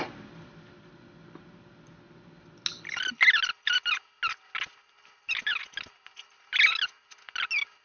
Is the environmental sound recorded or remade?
recorded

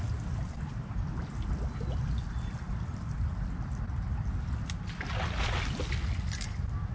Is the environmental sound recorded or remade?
recorded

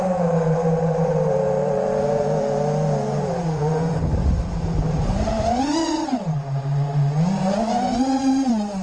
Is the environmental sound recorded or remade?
remade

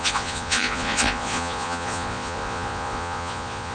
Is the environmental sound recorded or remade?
remade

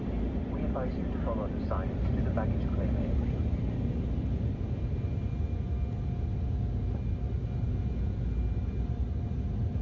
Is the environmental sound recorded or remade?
recorded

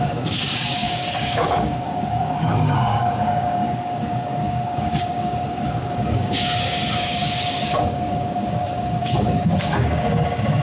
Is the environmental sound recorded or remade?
remade